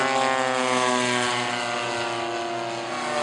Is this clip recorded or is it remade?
recorded